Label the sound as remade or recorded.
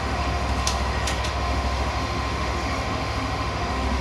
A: remade